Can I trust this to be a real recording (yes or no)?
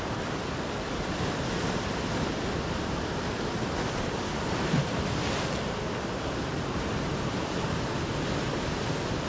yes